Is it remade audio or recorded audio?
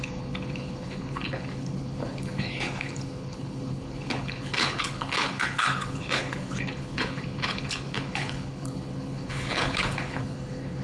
remade